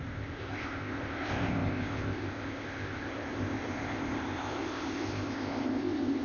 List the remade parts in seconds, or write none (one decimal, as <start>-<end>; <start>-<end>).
0.0-6.2